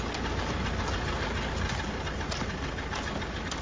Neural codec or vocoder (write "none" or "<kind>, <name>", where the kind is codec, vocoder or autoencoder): none